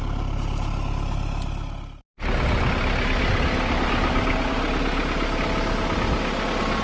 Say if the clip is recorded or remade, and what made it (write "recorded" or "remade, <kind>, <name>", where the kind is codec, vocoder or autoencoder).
recorded